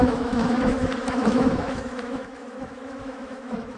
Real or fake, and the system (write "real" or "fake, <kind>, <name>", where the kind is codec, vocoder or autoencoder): fake, autoencoder, DAC-VAE